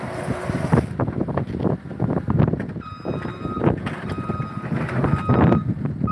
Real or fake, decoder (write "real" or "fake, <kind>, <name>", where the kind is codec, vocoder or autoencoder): real